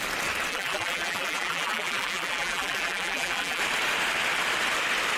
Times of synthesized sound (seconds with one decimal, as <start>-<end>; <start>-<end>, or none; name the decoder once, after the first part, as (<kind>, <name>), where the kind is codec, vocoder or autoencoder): 0.5-3.6 (vocoder, BigVGAN v2)